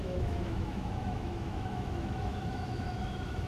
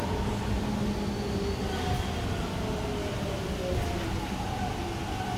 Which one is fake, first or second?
first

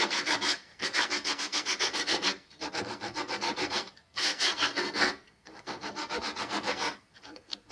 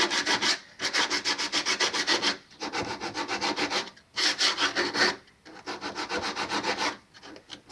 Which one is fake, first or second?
first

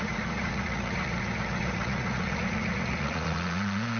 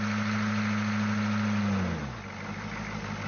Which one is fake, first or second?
first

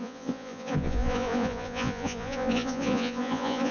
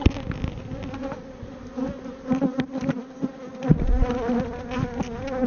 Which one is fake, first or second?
first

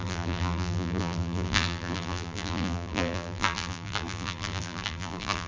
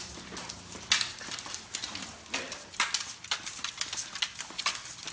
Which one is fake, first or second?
first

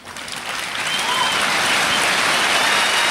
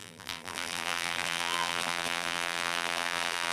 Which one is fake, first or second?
second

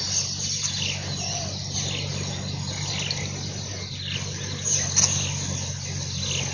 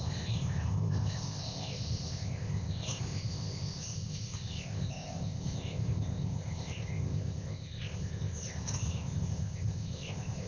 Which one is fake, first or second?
second